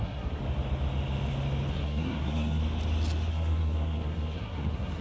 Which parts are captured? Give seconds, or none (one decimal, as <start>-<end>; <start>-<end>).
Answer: 0.4-1.7; 2.6-3.3